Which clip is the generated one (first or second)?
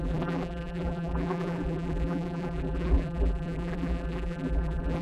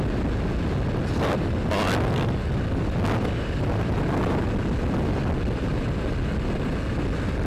first